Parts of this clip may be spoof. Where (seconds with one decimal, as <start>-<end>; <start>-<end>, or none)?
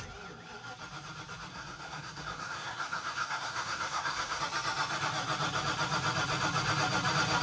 1.5-4.4